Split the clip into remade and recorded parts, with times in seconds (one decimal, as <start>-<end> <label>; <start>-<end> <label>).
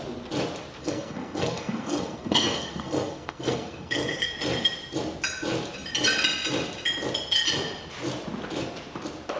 0.0-0.8 recorded; 0.8-4.3 remade; 4.3-9.4 recorded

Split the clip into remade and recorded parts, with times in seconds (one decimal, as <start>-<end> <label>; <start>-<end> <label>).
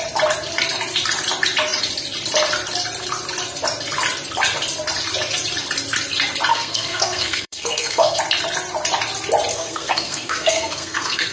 0.0-6.5 recorded; 6.5-8.2 remade; 8.2-9.5 recorded; 9.5-11.3 remade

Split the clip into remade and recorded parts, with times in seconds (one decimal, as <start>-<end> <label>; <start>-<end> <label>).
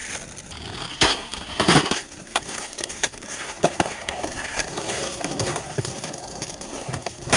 0.0-0.9 recorded; 0.9-7.4 remade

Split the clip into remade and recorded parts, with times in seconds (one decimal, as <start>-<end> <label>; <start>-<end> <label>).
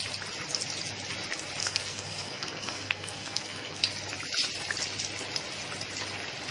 0.0-1.6 recorded; 1.6-3.8 remade; 3.8-6.5 recorded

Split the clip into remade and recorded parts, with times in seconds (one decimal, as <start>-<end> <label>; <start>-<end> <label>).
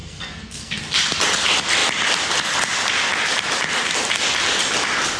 0.0-0.8 remade; 0.8-5.2 recorded